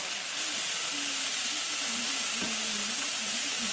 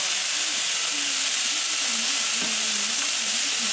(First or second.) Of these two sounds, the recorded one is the second